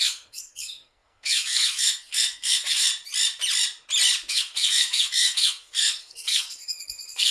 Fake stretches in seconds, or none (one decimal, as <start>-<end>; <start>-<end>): 0.0-2.9; 4.3-7.3